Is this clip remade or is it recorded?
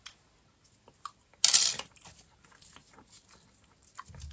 recorded